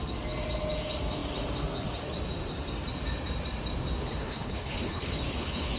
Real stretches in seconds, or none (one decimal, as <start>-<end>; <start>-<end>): 0.0-4.2